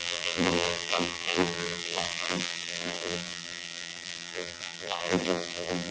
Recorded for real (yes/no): no